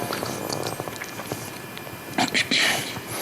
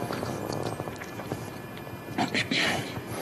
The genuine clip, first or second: second